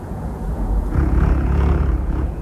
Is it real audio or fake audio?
fake